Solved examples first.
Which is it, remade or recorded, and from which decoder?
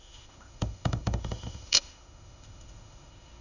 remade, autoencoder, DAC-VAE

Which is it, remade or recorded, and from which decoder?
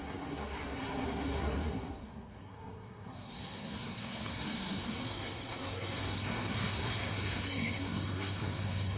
remade, codec, SNAC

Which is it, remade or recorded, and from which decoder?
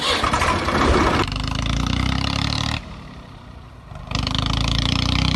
remade, vocoder, BigVGAN v2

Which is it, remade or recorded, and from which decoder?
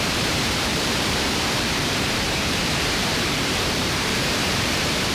remade, vocoder, BigVGAN v2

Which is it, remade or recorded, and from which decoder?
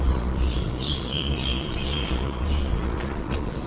remade, vocoder, Vocos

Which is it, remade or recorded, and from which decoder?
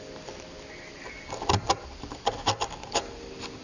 recorded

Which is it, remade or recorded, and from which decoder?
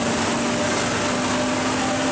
recorded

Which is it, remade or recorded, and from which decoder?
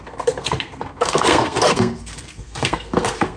remade, codec, SNAC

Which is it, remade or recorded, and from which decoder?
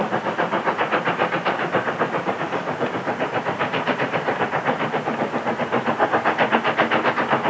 recorded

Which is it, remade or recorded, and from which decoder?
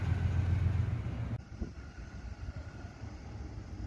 recorded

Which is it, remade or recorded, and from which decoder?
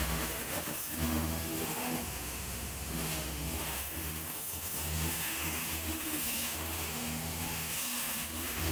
remade, autoencoder, DAC-VAE